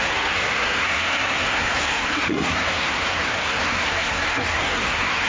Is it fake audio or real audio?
fake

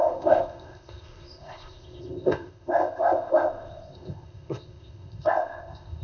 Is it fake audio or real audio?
fake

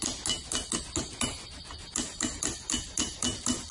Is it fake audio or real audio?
real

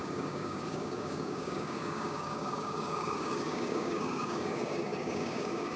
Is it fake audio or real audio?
fake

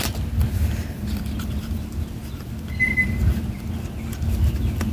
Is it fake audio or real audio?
real